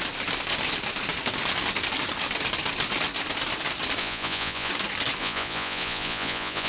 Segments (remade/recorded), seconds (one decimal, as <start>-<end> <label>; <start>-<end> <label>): 0.0-4.0 recorded; 4.0-4.7 remade; 4.7-5.2 recorded; 5.2-6.7 remade